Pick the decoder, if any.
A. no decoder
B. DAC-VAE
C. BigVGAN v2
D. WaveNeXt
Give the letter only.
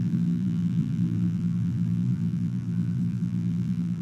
C